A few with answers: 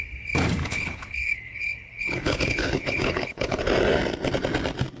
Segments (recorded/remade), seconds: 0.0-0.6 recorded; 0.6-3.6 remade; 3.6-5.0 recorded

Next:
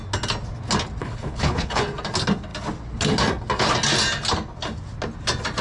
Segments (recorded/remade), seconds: 0.0-1.0 recorded; 1.0-1.8 remade; 1.8-5.6 recorded

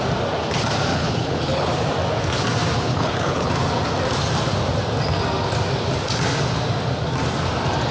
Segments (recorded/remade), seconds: 0.0-0.9 recorded; 0.9-1.7 remade; 1.7-2.9 recorded; 2.9-3.5 remade; 3.5-7.9 recorded

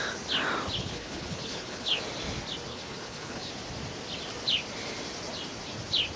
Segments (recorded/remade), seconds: 0.0-0.8 recorded; 0.8-2.0 remade; 2.0-2.7 recorded; 2.7-3.5 remade; 3.5-6.2 recorded

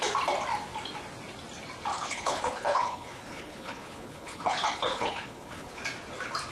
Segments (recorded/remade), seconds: 0.0-1.9 recorded; 1.9-5.8 remade; 5.8-6.5 recorded

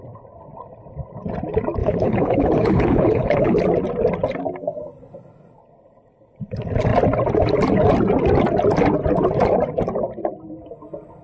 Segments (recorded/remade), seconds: 0.0-1.8 recorded; 1.8-3.6 remade; 3.6-11.2 recorded

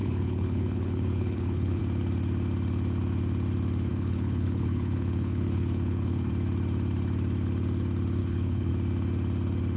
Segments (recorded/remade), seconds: 0.0-1.8 remade; 1.8-3.9 recorded; 3.9-6.3 remade; 6.3-8.2 recorded; 8.2-8.7 remade; 8.7-9.8 recorded